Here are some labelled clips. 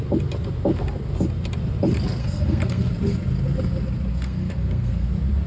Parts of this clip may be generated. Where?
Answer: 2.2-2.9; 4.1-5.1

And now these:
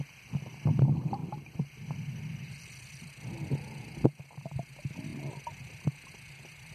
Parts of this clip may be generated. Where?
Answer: 5.1-5.9